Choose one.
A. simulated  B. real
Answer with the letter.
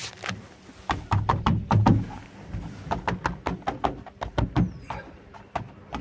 B